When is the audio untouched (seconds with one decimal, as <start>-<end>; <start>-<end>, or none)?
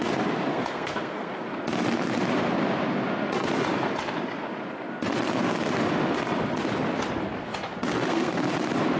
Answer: 0.0-0.5; 1.3-7.9; 8.5-9.0